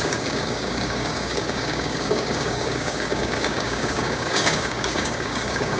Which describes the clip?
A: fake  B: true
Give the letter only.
A